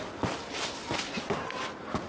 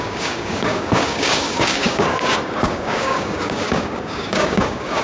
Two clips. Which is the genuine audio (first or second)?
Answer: first